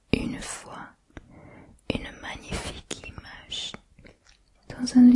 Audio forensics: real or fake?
real